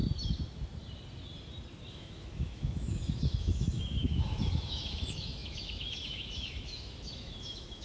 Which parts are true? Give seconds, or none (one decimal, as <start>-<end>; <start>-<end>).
0.0-1.9